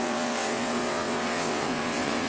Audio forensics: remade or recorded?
remade